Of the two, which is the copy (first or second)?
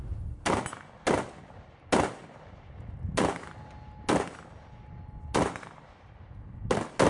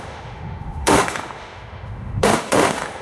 second